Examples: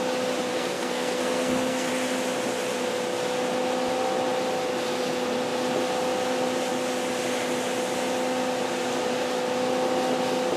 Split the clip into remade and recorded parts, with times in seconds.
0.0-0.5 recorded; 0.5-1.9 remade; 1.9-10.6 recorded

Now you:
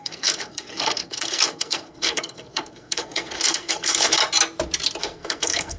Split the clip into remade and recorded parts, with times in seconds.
0.0-4.2 remade; 4.2-5.0 recorded; 5.0-5.8 remade

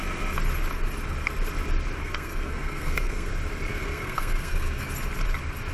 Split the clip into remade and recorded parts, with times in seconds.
0.0-2.0 recorded; 2.0-3.3 remade; 3.3-3.7 recorded; 3.7-4.9 remade; 4.9-5.7 recorded